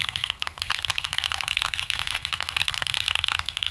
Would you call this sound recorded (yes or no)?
no